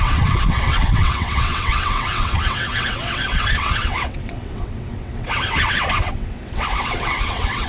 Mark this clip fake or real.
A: fake